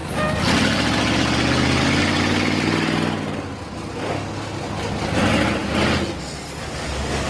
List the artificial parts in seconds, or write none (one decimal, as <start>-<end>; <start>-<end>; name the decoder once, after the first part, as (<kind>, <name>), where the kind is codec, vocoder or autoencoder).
none